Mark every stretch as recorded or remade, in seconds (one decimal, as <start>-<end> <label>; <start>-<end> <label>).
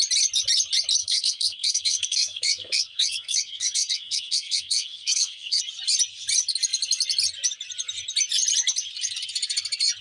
0.0-1.0 recorded; 1.0-5.6 remade; 5.6-10.0 recorded